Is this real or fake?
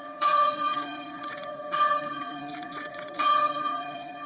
fake